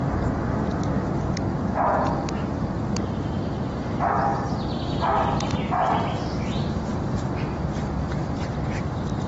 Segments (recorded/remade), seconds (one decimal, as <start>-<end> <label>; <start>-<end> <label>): 0.0-4.3 recorded; 4.3-4.8 remade; 4.8-6.9 recorded; 6.9-8.4 remade; 8.4-9.3 recorded